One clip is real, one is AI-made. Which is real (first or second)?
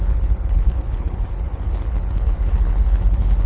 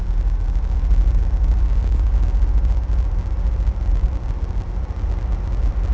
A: second